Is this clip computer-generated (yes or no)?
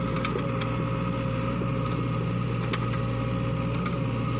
no